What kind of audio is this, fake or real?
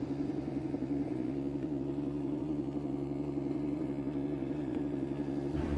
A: fake